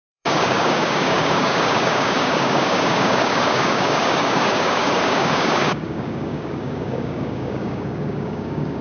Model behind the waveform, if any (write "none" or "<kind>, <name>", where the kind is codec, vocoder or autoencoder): codec, DAC